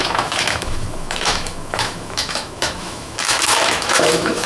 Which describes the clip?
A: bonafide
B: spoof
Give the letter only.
B